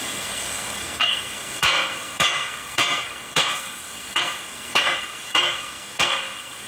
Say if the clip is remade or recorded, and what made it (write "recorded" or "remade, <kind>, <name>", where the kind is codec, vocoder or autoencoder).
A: remade, codec, SNAC